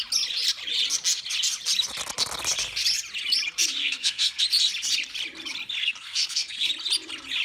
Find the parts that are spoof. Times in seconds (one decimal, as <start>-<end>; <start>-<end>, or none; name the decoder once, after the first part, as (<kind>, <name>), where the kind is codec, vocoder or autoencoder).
3.8-4.4 (codec, SNAC); 5.8-6.7